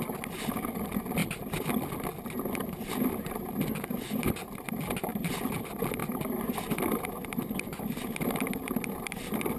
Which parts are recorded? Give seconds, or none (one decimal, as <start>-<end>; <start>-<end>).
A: 0.0-9.6